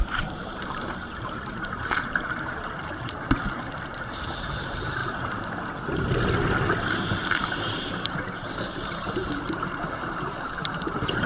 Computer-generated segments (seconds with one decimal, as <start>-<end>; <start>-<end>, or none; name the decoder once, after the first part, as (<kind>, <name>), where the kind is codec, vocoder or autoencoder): 0.0-5.0 (vocoder, BigVGAN v2); 7.1-11.3